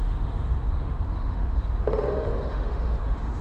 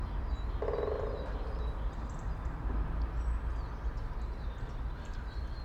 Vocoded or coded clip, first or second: first